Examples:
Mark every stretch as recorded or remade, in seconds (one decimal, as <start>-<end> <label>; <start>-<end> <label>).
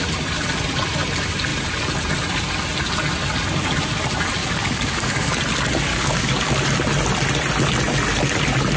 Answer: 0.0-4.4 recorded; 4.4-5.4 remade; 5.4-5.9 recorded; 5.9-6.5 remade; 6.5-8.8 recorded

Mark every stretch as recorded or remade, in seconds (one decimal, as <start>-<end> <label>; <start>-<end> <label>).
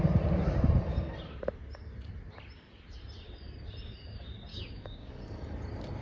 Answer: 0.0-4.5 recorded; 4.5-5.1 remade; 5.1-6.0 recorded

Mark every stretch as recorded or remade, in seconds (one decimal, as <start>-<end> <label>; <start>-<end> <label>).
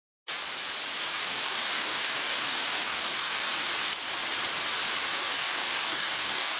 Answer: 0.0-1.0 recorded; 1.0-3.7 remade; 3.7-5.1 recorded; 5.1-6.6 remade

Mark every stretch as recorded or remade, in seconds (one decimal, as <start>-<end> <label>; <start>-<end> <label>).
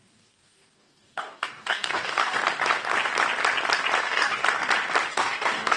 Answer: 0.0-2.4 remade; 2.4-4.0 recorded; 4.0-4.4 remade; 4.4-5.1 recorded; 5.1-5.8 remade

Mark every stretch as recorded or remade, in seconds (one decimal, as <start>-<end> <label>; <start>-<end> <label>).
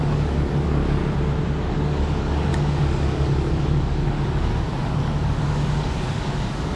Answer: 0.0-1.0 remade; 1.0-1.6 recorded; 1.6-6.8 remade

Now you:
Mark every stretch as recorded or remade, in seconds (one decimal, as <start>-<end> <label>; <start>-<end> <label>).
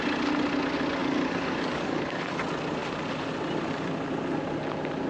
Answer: 0.0-1.0 recorded; 1.0-2.4 remade; 2.4-5.1 recorded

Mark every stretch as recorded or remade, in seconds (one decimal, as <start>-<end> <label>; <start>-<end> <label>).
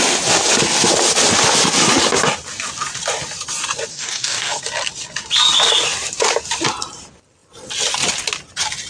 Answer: 0.0-3.9 recorded; 3.9-4.6 remade; 4.6-8.9 recorded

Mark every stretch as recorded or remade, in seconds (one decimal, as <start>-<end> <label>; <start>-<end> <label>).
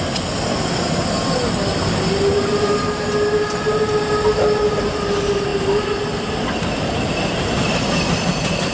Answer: 0.0-8.7 recorded